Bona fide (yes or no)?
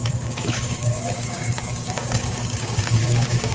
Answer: no